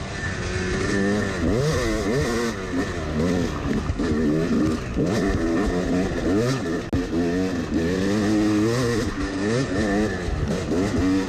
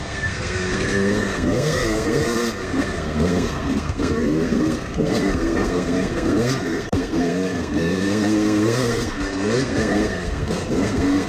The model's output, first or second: second